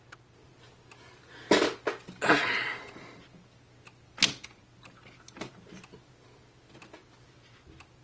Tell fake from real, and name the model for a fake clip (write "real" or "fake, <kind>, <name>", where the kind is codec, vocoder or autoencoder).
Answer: real